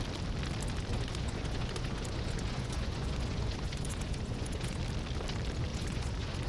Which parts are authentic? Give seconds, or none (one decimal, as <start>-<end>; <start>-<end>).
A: 0.0-0.9; 4.8-5.7